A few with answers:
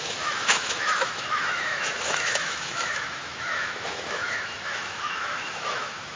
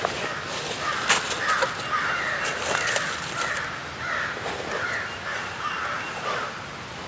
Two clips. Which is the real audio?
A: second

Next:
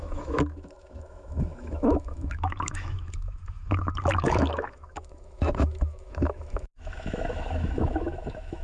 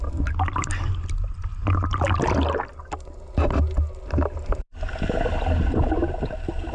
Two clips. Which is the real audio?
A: second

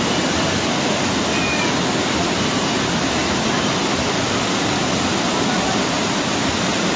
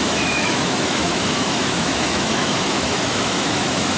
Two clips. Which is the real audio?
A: first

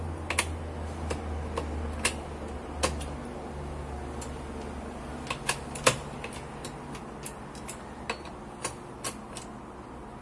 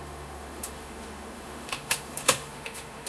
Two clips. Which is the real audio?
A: first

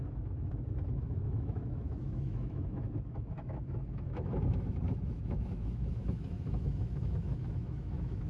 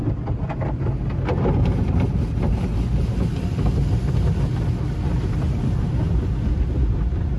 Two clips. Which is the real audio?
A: second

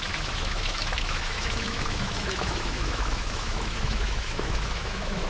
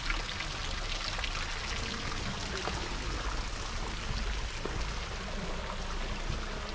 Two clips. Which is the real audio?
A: second